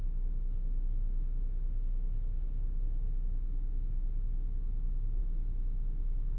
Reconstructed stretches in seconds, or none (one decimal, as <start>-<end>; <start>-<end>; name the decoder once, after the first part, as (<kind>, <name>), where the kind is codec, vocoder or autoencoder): none